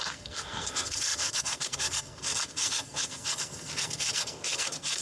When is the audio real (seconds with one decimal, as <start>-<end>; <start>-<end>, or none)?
none